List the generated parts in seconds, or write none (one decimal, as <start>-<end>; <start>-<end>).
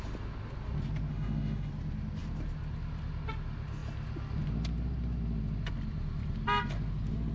1.1-1.7